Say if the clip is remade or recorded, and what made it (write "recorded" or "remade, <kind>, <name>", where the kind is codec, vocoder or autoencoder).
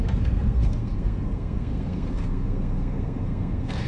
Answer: remade, codec, SNAC